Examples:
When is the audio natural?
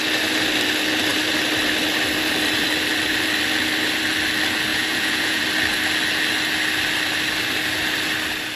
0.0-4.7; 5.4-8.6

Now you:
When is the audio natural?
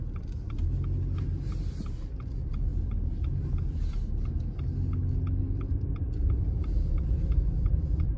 0.0-2.7; 4.2-5.9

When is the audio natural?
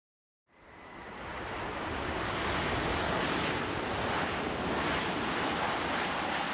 0.0-1.3; 2.4-6.5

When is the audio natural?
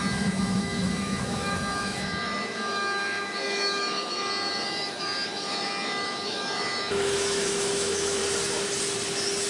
8.2-9.5